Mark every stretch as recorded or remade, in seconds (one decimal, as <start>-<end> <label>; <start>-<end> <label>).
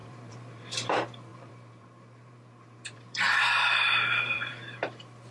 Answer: 0.0-0.9 remade; 0.9-1.3 recorded; 1.3-4.5 remade; 4.5-5.3 recorded